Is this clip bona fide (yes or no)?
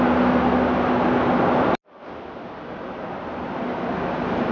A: yes